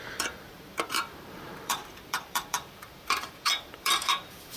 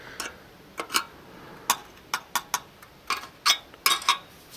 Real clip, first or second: second